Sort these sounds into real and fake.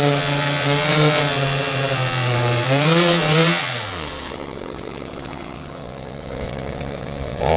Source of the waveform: fake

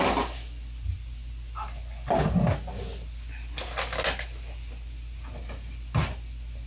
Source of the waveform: real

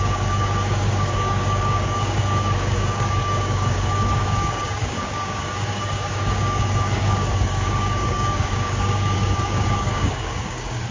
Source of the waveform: fake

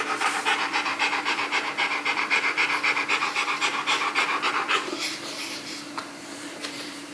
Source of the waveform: fake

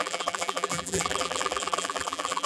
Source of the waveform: fake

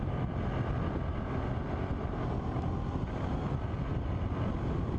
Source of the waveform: real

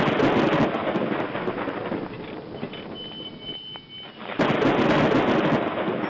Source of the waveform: real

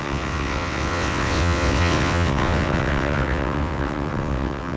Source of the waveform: fake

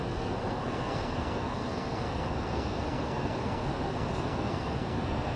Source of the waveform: fake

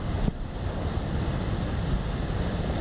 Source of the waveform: real